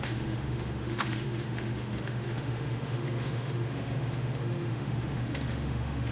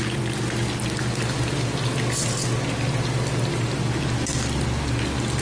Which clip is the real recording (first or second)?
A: second